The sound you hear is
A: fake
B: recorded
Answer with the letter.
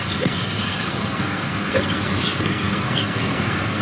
A